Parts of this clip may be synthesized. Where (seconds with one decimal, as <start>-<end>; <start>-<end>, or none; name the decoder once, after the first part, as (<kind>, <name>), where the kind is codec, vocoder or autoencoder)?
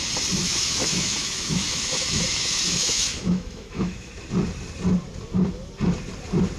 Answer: 0.4-4.1 (autoencoder, DAC-VAE)